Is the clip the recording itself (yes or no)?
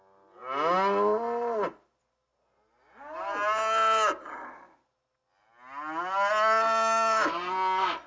yes